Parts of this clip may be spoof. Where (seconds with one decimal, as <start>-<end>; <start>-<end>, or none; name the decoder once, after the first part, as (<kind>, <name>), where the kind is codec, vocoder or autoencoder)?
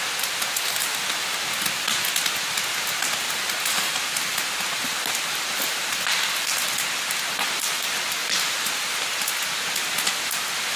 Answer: 8.2-8.8 (vocoder, BigVGAN v2)